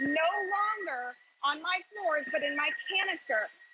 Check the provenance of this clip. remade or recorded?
recorded